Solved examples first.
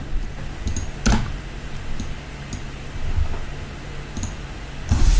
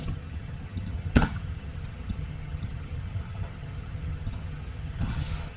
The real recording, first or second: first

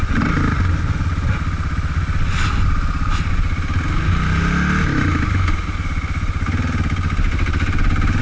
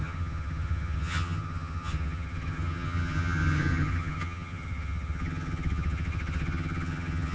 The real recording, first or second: first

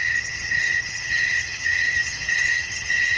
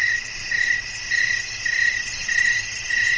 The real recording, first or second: second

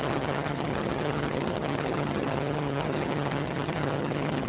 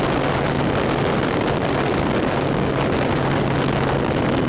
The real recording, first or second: second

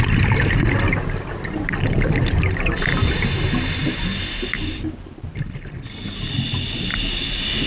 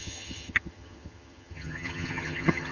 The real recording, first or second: first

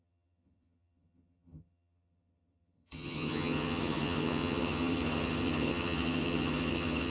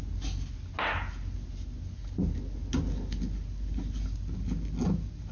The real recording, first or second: second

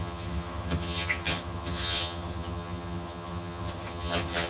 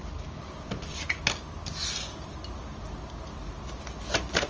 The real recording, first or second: second